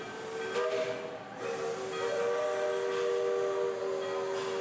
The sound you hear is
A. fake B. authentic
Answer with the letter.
B